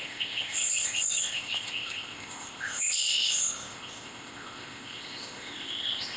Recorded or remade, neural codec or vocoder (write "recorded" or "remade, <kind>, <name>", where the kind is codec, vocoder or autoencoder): remade, codec, ZipCodec